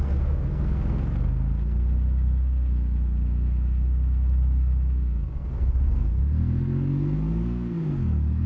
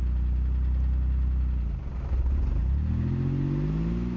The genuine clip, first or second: second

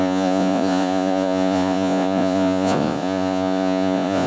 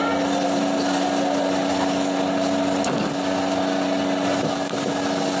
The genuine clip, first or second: second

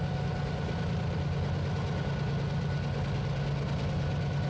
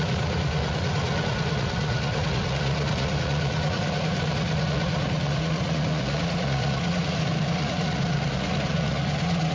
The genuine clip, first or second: first